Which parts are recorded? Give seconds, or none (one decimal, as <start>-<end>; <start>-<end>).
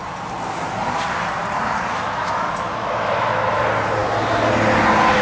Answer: 0.0-1.9; 3.6-5.2